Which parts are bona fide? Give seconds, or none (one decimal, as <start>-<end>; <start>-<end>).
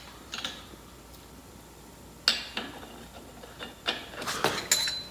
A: 0.0-5.1